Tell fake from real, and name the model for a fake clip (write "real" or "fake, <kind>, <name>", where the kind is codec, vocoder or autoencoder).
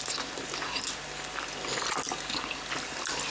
real